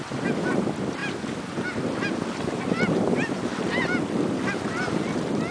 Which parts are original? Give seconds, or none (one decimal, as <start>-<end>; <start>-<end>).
0.0-5.5